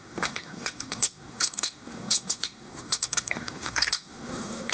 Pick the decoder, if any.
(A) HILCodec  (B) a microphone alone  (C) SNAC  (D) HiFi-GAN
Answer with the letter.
C